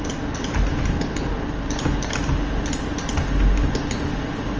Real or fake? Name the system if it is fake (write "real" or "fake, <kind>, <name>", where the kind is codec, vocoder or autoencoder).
real